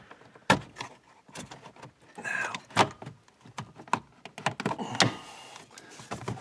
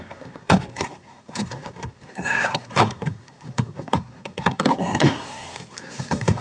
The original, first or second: first